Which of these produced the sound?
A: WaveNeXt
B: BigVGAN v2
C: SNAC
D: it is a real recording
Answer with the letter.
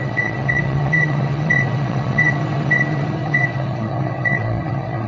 A